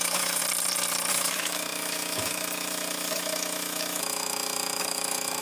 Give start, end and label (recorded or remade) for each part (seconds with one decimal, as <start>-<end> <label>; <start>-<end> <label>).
0.0-0.4 remade; 0.4-1.1 recorded; 1.1-5.4 remade